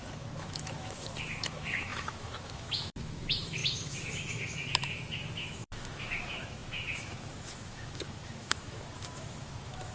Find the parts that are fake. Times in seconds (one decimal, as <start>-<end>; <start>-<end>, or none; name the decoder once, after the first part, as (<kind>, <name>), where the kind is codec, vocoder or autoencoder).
0.0-9.9 (autoencoder, DAC-VAE)